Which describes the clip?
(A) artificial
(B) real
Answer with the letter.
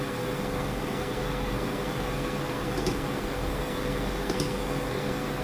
A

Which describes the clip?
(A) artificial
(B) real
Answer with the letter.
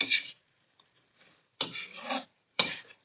A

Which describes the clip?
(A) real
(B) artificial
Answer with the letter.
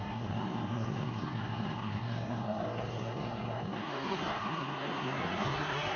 B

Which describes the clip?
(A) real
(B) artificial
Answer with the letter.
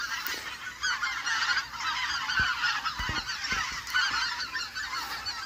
A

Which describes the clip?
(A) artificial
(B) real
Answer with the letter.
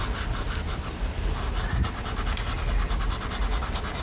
A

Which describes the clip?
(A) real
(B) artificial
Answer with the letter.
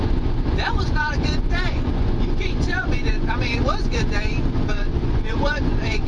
B